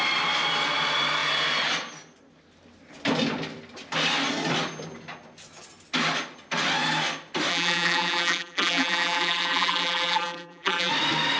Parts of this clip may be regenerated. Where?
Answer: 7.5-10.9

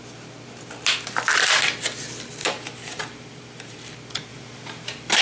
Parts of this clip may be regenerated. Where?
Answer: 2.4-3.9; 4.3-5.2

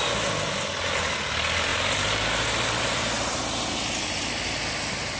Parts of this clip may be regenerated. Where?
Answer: 1.7-3.4